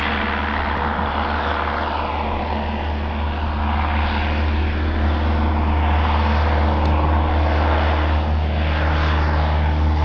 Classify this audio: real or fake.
real